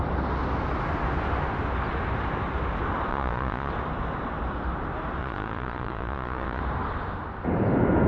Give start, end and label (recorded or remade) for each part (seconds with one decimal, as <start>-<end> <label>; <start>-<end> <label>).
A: 0.0-3.1 recorded; 3.1-3.7 remade; 3.7-5.2 recorded; 5.2-6.6 remade; 6.6-8.1 recorded